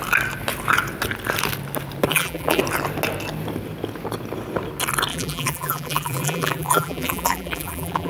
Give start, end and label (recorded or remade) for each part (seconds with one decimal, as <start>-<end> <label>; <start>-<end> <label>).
0.0-2.1 recorded; 2.1-2.6 remade; 2.6-5.1 recorded; 5.1-8.1 remade